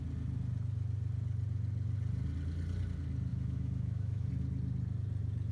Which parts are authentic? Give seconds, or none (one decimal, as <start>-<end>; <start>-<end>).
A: 0.0-3.3; 4.3-5.5